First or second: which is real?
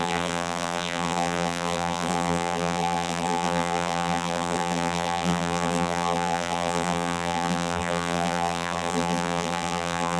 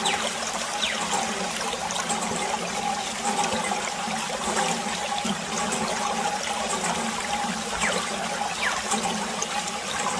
second